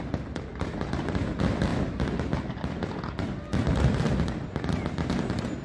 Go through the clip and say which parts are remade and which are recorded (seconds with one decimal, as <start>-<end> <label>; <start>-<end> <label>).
0.0-5.6 recorded